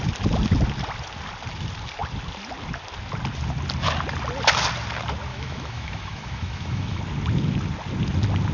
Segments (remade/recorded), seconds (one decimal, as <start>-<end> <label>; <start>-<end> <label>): 0.0-5.3 recorded; 5.3-7.0 remade; 7.0-8.5 recorded